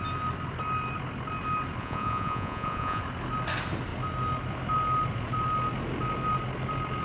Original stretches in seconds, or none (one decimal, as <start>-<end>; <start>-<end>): 0.0-1.8; 3.0-7.0

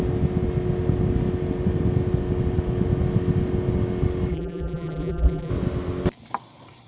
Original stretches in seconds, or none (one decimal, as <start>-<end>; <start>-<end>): 0.0-4.3; 5.5-6.9

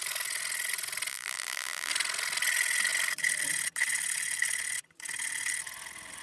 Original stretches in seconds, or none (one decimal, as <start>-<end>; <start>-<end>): 0.0-1.1; 1.9-6.2

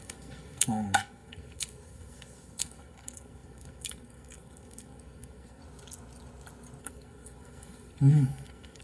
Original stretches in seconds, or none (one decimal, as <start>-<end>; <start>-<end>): 5.6-6.8

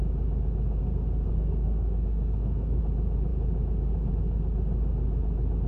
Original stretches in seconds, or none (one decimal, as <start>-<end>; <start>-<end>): 0.0-0.8; 2.8-5.7

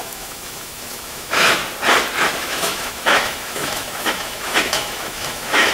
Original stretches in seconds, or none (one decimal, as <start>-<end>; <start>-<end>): 1.6-2.4

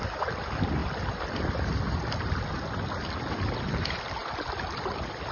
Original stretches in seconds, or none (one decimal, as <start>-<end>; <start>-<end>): 0.0-0.8; 2.5-3.0; 3.6-4.2

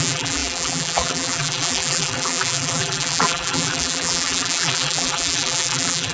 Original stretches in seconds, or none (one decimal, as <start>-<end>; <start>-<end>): none